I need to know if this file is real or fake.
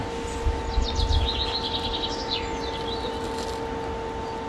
real